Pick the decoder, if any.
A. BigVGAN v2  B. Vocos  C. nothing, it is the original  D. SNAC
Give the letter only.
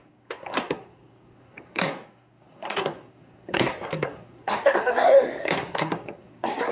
D